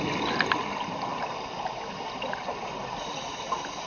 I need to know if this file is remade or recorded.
recorded